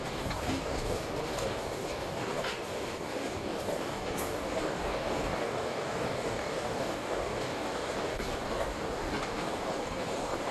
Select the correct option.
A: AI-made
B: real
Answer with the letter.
A